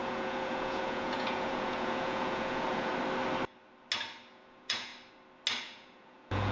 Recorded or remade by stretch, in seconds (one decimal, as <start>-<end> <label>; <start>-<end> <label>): 0.0-2.9 remade; 2.9-4.3 recorded; 4.3-4.9 remade; 4.9-5.6 recorded; 5.6-6.5 remade